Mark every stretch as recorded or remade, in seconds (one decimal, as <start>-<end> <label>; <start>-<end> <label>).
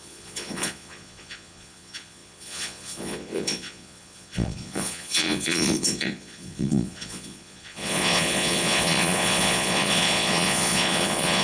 0.0-11.4 remade